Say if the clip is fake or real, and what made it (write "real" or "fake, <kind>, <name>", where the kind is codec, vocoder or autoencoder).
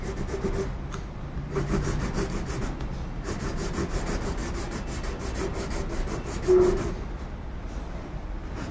real